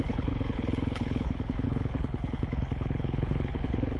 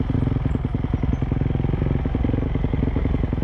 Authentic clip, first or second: second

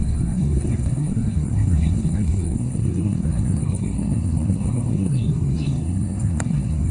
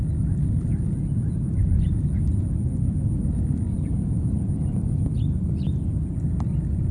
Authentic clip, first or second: second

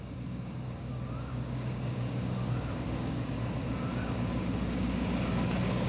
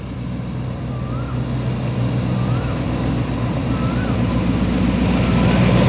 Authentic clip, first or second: second